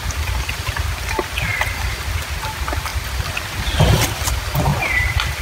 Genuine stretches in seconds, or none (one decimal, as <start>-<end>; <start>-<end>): 0.0-4.7